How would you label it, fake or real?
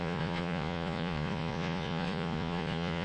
fake